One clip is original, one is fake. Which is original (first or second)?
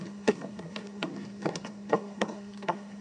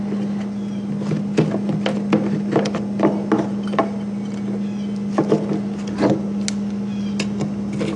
second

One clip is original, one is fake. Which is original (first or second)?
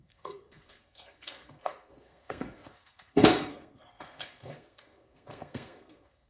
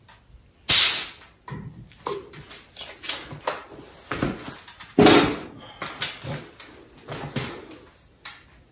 second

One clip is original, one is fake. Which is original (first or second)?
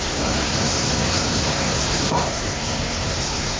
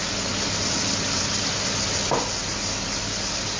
second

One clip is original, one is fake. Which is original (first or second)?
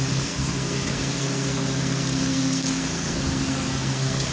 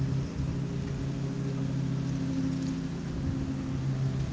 second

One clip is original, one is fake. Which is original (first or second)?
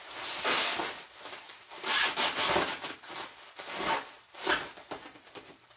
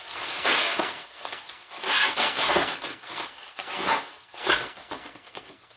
first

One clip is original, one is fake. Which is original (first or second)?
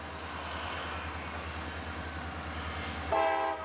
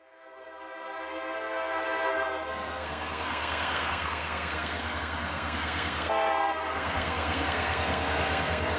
first